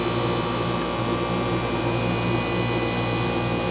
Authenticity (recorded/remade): recorded